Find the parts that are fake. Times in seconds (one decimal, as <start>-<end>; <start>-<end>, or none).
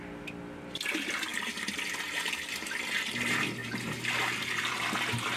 3.6-4.3